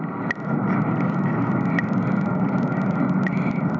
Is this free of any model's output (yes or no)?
yes